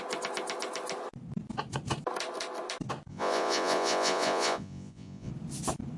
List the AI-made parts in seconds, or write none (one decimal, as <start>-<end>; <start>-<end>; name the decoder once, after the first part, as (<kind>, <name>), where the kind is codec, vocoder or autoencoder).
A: 3.1-5.3 (vocoder, Vocos)